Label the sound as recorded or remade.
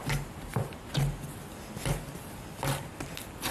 recorded